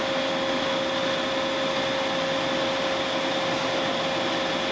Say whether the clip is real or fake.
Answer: real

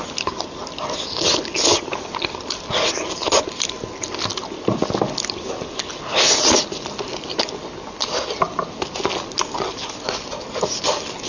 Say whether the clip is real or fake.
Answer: real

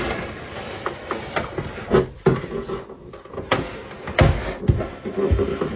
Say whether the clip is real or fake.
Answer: real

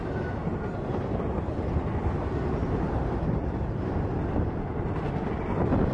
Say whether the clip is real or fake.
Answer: real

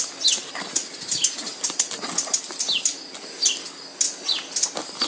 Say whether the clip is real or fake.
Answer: real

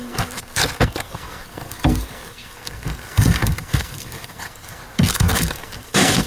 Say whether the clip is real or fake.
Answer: fake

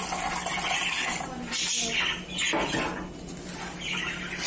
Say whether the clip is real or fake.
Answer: real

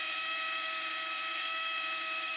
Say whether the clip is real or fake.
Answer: fake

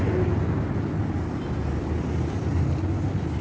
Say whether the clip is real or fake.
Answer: real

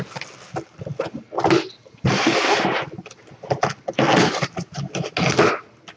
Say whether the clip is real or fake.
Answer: real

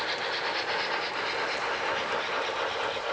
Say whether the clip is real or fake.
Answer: real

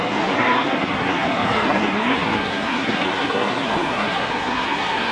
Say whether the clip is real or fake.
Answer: fake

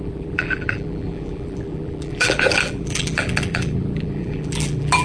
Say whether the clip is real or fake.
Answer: fake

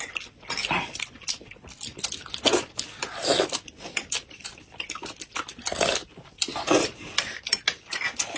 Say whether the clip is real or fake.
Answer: real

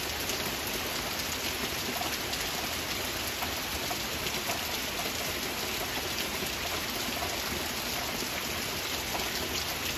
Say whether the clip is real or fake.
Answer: real